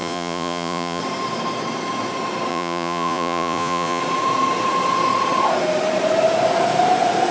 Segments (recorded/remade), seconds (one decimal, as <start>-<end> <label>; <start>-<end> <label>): 0.0-1.0 remade; 1.0-2.5 recorded; 2.5-4.0 remade; 4.0-7.3 recorded